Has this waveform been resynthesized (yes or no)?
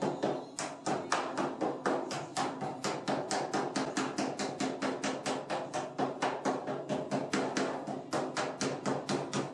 no